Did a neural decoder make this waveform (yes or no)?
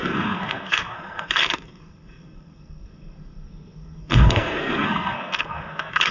yes